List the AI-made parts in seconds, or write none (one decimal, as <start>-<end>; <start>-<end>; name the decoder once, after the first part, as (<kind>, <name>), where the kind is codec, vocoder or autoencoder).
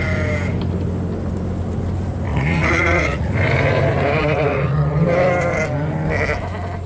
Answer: 2.3-3.3 (vocoder, Vocos); 4.2-5.0